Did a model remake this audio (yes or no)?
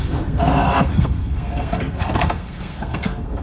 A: yes